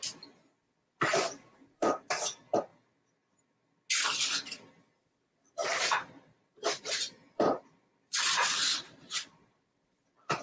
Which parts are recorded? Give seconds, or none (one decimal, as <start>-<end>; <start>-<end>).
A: 0.0-1.5; 2.2-5.6; 10.0-10.4